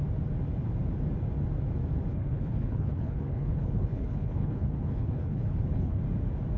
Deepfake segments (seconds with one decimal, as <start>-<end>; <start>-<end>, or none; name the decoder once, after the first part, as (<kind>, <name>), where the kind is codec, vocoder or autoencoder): 2.1-6.0 (codec, HILCodec)